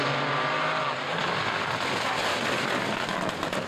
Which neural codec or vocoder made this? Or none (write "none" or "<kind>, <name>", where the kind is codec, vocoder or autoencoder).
none